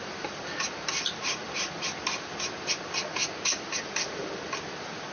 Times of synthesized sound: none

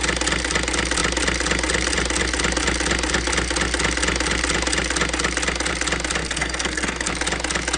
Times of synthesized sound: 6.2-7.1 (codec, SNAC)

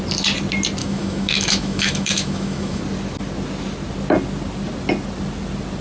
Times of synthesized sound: 0.8-2.8 (autoencoder, DAC-VAE)

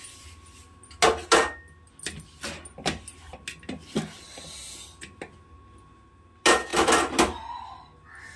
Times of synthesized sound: none

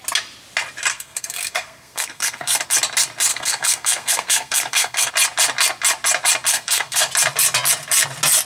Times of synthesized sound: 0.9-2.6 (codec, SNAC); 3.3-5.1; 6.5-7.1